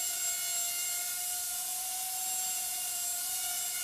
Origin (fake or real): real